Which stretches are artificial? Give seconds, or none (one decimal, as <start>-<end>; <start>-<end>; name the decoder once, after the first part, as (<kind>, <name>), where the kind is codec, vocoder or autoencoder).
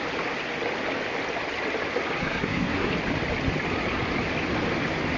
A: 2.2-2.9 (codec, SNAC)